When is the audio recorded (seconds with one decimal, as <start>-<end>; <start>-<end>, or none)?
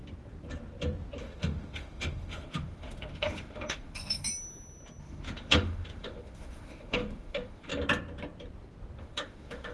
0.0-1.2; 4.3-5.0; 7.7-9.0